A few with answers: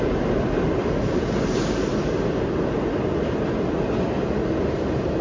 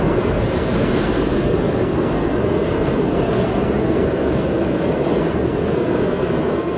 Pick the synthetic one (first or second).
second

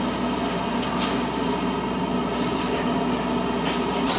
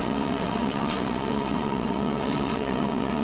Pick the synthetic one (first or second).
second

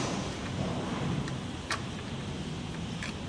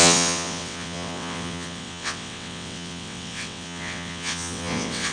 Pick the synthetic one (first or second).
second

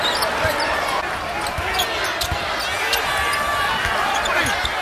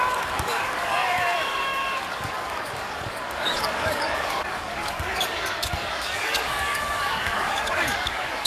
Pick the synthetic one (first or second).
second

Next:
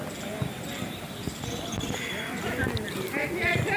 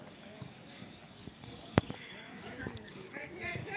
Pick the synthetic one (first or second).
second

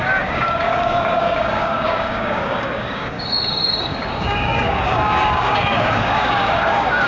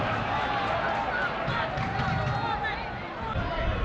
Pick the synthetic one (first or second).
first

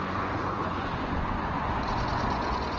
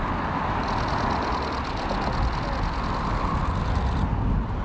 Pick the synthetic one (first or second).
first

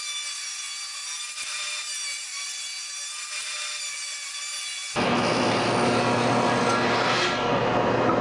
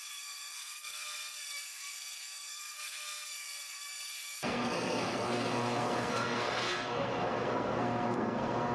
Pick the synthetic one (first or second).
second